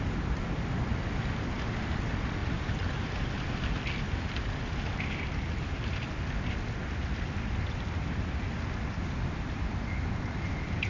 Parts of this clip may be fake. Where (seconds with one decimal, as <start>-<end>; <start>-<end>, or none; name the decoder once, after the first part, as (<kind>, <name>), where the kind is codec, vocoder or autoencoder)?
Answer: none